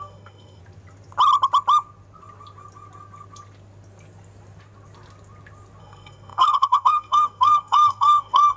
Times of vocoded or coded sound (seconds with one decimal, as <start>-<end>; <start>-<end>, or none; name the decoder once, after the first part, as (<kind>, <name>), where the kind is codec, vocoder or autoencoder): 0.0-0.6 (codec, SNAC); 5.8-8.6